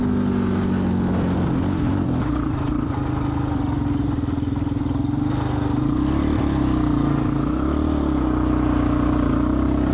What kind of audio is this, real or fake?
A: real